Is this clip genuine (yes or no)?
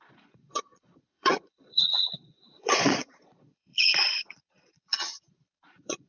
no